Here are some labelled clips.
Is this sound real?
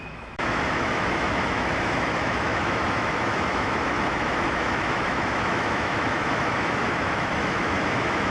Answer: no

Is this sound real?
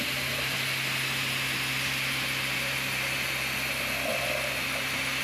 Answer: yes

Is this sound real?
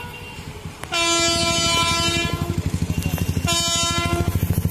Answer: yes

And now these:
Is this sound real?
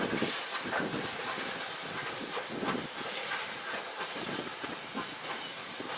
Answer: yes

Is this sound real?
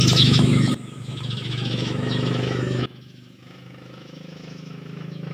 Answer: no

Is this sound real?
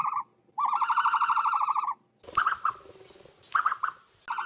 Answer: yes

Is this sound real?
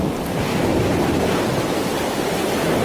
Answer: yes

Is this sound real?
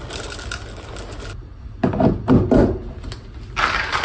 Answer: yes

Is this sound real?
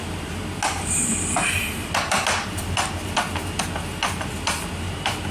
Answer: yes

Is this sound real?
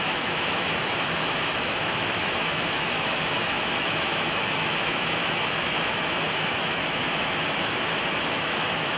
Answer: no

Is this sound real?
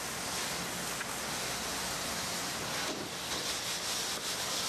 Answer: yes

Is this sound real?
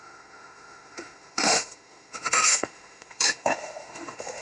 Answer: no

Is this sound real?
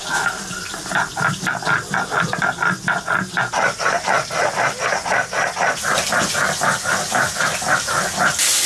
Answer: yes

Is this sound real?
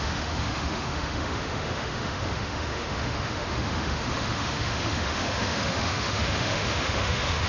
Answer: no